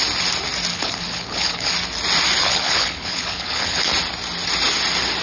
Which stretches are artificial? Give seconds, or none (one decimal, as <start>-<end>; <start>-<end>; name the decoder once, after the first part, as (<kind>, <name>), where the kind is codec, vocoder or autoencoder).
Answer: 0.7-1.7 (codec, HILCodec); 2.4-3.9